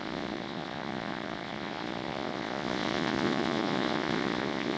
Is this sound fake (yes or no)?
yes